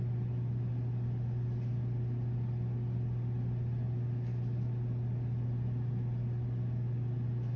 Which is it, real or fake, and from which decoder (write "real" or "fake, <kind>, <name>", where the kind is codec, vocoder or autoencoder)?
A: real